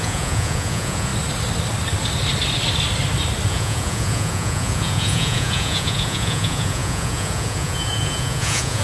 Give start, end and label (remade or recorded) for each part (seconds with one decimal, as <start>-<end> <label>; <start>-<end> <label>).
0.0-1.1 remade; 1.1-3.5 recorded; 3.5-8.8 remade